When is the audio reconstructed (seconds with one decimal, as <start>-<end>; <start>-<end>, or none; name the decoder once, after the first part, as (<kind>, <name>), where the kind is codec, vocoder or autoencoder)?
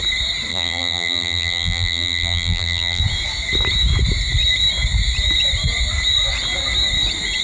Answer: 0.5-3.0 (vocoder, BigVGAN v2)